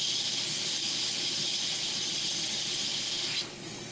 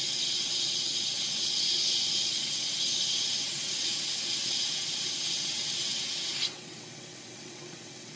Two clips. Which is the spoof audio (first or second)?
second